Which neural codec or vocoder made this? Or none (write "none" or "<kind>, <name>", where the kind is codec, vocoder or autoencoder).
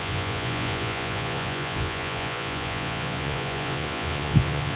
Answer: vocoder, Vocos